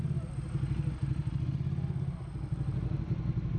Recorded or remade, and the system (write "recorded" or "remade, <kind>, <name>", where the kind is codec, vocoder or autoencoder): recorded